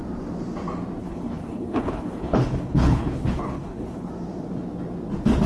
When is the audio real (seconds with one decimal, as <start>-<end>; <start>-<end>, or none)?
0.0-1.0; 4.1-5.5